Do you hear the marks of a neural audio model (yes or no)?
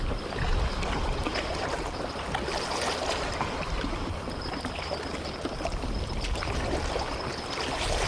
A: no